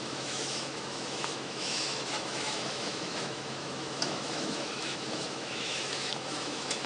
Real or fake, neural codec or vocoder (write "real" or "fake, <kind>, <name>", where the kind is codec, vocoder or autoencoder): fake, autoencoder, DAC-VAE